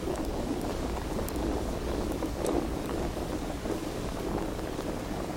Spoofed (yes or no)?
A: yes